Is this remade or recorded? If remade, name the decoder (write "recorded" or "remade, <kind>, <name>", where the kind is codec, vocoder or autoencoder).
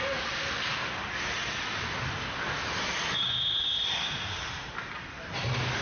recorded